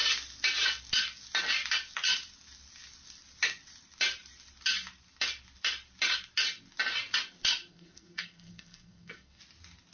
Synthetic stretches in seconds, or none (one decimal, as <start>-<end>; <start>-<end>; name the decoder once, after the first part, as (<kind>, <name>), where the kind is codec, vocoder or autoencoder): 7.7-9.4 (codec, SNAC)